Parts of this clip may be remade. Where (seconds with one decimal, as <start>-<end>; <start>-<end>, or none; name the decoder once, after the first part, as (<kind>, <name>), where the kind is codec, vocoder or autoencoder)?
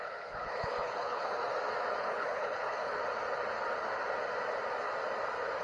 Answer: 0.0-1.4 (codec, HILCodec); 2.0-3.0